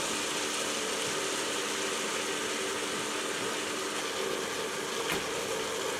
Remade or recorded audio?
recorded